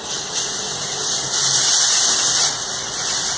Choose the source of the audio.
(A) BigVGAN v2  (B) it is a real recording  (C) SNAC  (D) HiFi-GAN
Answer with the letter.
B